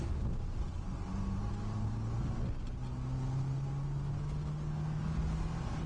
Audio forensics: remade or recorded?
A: recorded